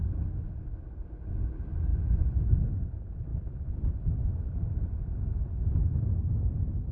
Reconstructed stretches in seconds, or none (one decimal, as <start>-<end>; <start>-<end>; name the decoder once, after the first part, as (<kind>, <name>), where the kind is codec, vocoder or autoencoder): none